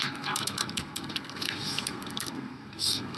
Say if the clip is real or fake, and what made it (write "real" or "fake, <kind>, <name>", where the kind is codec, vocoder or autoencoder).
fake, codec, SNAC